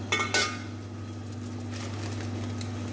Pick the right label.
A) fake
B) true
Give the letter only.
B